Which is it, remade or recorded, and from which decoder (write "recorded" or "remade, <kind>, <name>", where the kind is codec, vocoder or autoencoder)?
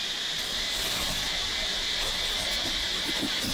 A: recorded